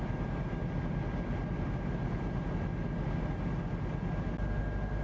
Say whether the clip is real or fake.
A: real